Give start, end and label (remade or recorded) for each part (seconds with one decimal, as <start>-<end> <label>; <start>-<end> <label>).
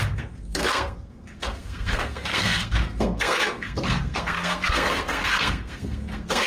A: 0.0-6.5 remade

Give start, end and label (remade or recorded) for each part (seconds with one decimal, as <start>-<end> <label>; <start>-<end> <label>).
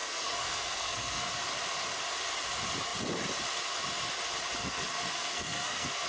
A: 0.0-1.3 remade; 1.3-4.6 recorded; 4.6-6.1 remade